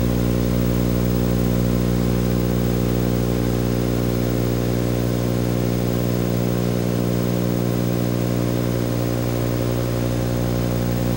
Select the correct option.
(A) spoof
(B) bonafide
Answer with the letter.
B